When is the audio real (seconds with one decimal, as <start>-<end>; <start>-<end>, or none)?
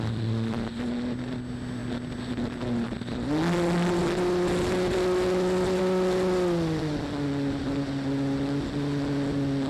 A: 0.0-9.7